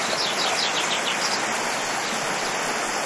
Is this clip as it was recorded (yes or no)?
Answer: yes